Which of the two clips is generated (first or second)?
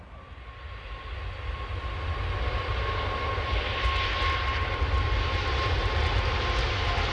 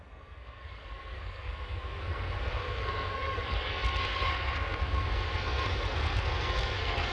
second